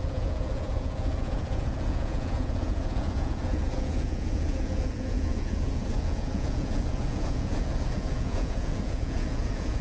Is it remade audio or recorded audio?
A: remade